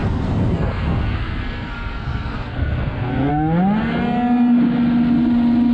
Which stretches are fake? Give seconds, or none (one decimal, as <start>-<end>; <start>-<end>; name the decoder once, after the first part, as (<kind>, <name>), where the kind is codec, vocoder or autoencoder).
0.0-3.3 (codec, SNAC)